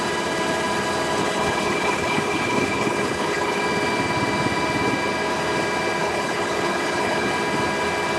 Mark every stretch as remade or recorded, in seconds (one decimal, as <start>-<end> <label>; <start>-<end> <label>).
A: 0.0-1.2 recorded; 1.2-3.6 remade; 3.6-6.0 recorded; 6.0-7.3 remade; 7.3-8.2 recorded